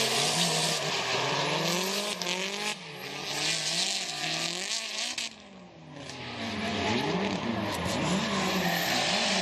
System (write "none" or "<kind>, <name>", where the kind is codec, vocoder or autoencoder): none